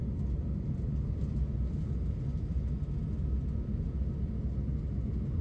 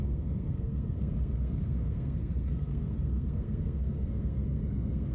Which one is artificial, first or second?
second